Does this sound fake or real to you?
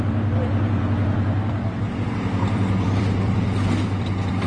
fake